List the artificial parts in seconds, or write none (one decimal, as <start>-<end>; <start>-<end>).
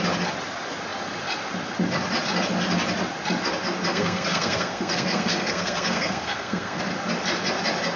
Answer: 3.9-6.8